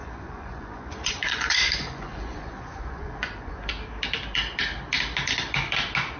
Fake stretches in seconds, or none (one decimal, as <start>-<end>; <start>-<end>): 0.0-3.7